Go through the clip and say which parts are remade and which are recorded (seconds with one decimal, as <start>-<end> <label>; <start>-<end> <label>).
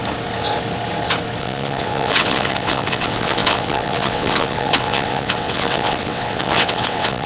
0.0-1.4 recorded; 1.4-7.3 remade